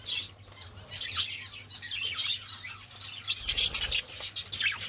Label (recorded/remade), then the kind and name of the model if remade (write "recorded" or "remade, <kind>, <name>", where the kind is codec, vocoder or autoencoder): recorded